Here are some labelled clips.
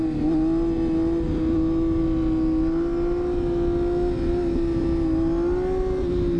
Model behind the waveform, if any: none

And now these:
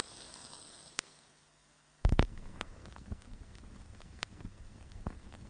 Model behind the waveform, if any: codec, SNAC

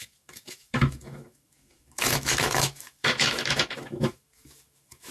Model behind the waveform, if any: autoencoder, DAC-VAE